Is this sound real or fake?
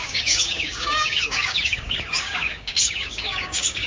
fake